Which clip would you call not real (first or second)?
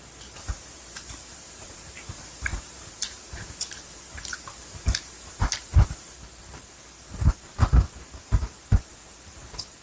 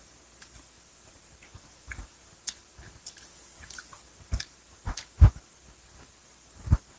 first